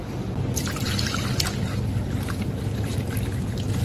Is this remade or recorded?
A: recorded